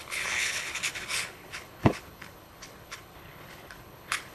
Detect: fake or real fake